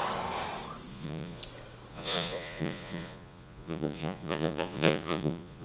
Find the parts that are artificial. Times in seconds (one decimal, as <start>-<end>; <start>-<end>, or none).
0.9-1.4; 1.9-5.6